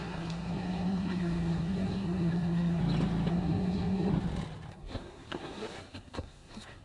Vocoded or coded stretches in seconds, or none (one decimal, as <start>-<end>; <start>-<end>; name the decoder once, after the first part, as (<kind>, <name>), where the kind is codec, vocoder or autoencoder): 0.0-2.8 (codec, SNAC); 3.3-4.1; 4.7-6.8